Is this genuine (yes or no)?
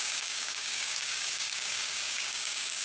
no